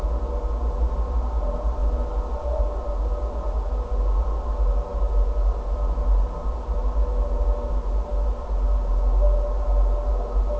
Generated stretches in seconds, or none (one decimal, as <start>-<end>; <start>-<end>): none